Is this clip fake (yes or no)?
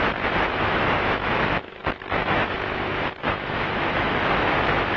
yes